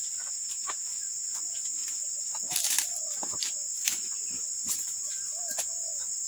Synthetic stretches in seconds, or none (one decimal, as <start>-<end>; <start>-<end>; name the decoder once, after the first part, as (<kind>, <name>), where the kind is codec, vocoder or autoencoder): 1.8-5.4 (vocoder, BigVGAN v2)